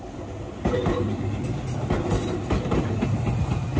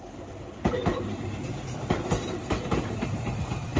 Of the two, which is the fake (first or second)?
second